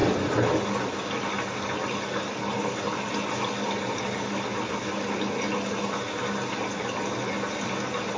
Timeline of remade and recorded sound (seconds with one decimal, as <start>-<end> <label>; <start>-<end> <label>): 0.0-8.2 recorded